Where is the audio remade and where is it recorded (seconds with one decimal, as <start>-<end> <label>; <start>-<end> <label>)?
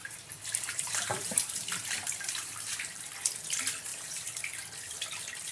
0.0-3.1 remade; 3.1-3.9 recorded; 3.9-4.4 remade; 4.4-5.5 recorded